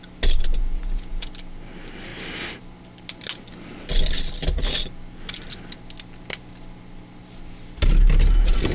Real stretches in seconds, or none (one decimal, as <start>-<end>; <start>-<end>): 0.0-0.5; 1.3-8.7